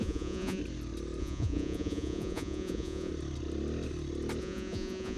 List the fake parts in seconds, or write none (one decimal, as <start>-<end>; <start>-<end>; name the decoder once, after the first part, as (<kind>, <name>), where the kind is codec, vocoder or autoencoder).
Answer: 0.0-0.6 (vocoder, Vocos); 1.2-3.1; 4.4-5.2

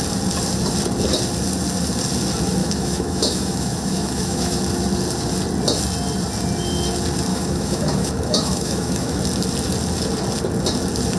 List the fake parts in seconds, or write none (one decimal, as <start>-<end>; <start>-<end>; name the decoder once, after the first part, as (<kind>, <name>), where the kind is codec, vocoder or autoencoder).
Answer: 2.6-4.6 (autoencoder, DAC-VAE); 7.3-9.2

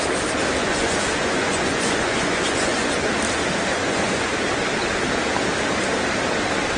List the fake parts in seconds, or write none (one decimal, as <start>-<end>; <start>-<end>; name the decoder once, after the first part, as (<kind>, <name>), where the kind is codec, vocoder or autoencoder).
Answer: 0.6-3.1 (vocoder, Vocos); 3.7-4.3

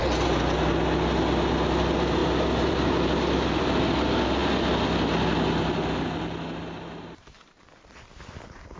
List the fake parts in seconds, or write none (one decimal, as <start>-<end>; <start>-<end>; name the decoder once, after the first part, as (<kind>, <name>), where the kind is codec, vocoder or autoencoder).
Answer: 2.2-3.8 (vocoder, BigVGAN v2)

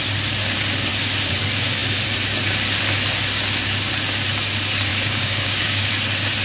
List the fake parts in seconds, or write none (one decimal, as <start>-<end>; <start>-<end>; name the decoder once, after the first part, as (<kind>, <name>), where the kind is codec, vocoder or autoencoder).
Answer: 4.9-5.9 (codec, DAC)

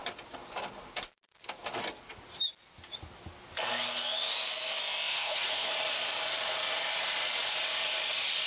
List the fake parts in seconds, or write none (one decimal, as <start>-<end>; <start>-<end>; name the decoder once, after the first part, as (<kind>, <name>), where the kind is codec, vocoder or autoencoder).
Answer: 5.1-5.7 (codec, HILCodec)